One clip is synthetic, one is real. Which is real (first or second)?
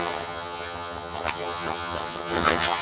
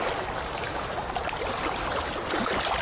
second